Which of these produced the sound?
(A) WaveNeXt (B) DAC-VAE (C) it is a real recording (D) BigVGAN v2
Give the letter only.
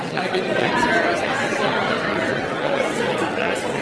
A